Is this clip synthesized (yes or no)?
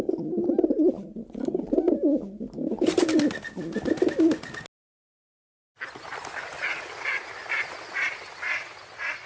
no